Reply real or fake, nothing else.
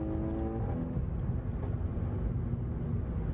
real